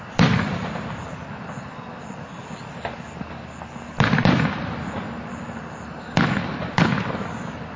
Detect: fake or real real